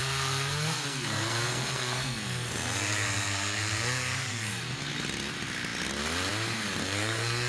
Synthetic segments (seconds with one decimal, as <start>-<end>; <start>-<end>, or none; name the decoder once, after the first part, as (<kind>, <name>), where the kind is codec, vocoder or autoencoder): 0.0-4.5 (codec, SNAC); 6.8-7.5